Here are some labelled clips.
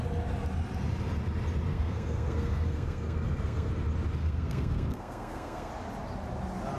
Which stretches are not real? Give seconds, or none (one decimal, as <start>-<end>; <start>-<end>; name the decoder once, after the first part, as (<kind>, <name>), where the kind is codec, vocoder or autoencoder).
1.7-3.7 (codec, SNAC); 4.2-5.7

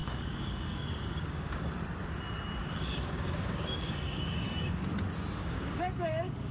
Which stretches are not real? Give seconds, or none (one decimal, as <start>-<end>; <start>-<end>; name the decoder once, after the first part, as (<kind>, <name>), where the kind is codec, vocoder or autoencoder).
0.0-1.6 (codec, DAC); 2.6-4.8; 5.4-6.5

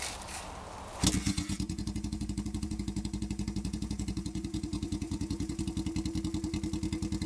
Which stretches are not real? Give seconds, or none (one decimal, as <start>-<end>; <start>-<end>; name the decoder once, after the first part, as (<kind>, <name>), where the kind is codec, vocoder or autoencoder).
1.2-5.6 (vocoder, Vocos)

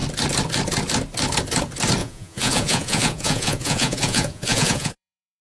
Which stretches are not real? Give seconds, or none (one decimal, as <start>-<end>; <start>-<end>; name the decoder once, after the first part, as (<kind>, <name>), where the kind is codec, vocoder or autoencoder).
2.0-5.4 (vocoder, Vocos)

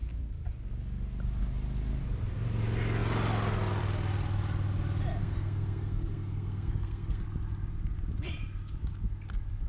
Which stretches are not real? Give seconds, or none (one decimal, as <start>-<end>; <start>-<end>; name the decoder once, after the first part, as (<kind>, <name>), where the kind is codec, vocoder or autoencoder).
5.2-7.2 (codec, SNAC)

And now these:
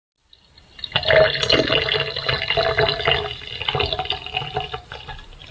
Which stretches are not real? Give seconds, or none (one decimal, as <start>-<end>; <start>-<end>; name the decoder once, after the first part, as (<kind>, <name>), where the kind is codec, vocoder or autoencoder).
none

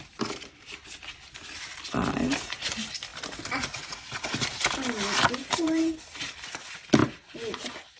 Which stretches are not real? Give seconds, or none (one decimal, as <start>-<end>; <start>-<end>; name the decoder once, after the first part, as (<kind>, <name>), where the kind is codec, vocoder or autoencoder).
5.4-6.3 (vocoder, BigVGAN v2)

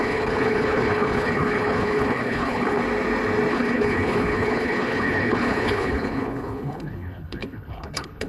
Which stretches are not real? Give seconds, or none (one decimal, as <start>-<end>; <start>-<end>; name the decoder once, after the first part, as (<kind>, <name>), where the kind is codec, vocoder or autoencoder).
0.0-2.8 (codec, HILCodec); 3.5-8.3